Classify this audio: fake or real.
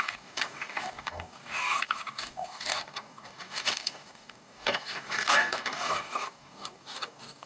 fake